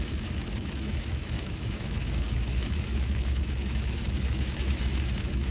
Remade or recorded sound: remade